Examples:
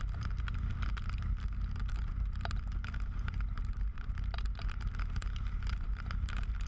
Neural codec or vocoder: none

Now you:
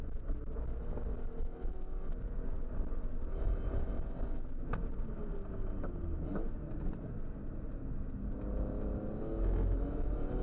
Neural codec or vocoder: none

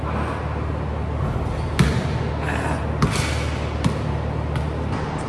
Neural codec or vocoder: none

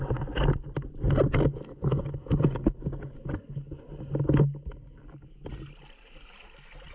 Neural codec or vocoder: none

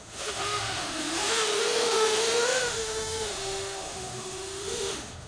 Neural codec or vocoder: autoencoder, DAC-VAE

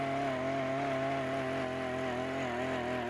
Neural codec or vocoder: none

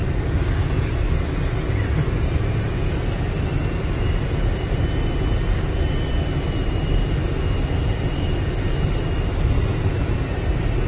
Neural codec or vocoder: none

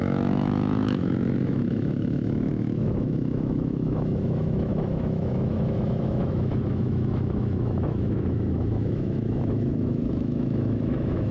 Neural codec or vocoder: autoencoder, DAC-VAE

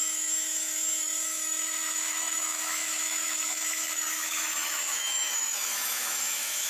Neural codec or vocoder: autoencoder, DAC-VAE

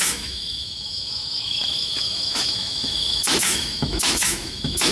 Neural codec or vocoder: autoencoder, DAC-VAE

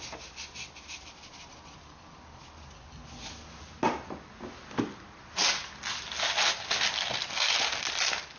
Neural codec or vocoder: none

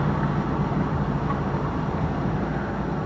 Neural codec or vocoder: none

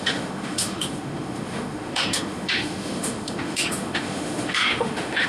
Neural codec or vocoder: autoencoder, DAC-VAE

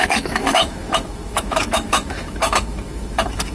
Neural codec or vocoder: autoencoder, DAC-VAE